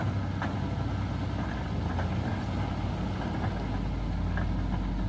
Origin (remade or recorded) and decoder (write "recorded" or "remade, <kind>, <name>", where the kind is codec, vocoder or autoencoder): recorded